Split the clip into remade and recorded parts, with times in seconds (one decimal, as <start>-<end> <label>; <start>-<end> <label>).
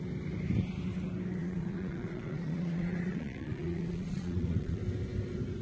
0.0-1.4 recorded; 1.4-4.8 remade; 4.8-5.6 recorded